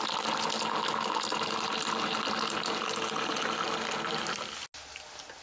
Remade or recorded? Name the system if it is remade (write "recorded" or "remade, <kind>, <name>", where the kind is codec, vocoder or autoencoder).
recorded